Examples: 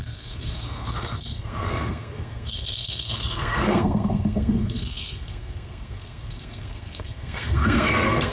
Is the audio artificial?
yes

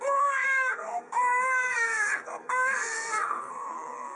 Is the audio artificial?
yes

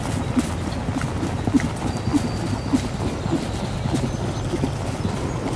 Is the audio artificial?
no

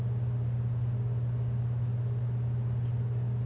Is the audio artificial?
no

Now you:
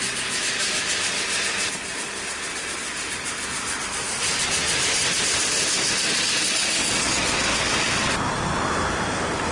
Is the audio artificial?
no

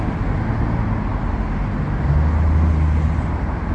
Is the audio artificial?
no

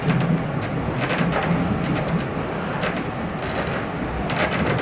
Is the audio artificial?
no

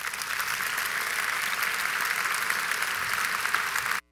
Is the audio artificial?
no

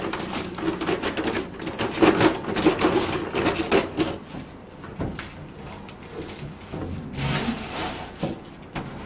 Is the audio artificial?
no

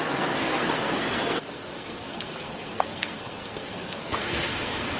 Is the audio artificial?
yes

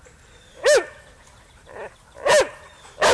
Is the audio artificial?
no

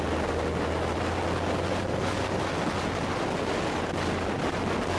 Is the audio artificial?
no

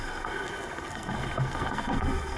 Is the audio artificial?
yes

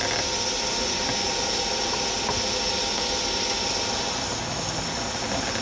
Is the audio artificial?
no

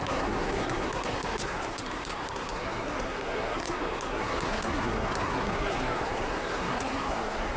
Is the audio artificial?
yes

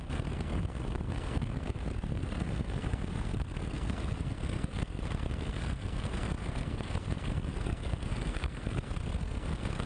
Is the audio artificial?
yes